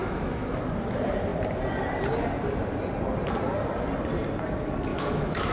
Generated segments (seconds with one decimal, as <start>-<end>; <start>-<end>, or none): 0.0-0.6; 4.9-5.5